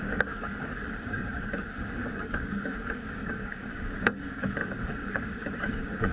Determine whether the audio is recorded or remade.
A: remade